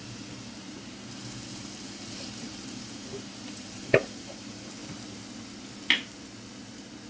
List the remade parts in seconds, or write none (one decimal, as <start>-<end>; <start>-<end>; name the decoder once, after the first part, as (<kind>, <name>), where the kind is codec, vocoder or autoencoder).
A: 0.6-4.8 (vocoder, BigVGAN v2)